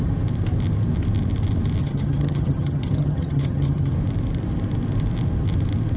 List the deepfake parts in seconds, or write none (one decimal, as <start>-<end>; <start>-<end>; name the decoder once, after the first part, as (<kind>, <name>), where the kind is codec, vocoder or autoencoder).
1.8-3.9 (vocoder, HiFi-GAN)